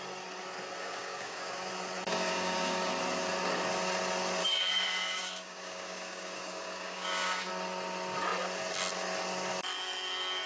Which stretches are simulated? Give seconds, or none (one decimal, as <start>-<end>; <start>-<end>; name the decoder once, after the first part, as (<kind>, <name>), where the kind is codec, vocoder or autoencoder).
0.8-1.7 (codec, DAC); 2.1-2.9; 4.4-7.5